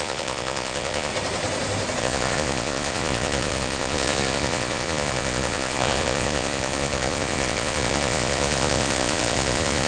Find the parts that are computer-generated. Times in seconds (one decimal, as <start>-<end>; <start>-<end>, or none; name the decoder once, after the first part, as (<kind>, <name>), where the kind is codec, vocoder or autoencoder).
0.0-1.1 (vocoder, Vocos); 2.0-9.9